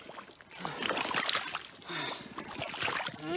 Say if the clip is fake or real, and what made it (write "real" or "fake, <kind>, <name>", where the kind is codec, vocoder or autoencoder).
real